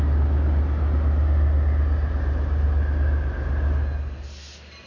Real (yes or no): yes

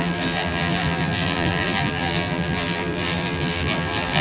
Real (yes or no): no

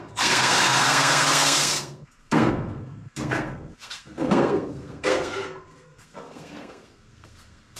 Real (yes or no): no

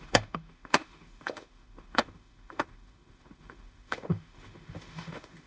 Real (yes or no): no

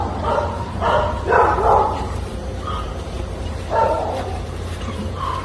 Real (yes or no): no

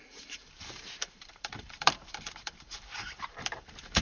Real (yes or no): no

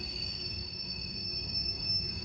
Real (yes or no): no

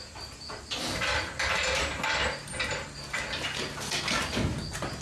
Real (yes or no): yes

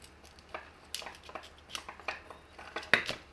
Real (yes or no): yes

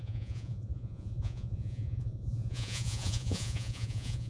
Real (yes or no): no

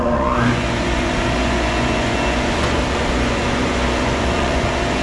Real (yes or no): no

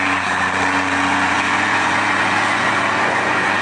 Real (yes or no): no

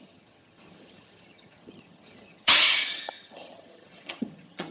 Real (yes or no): no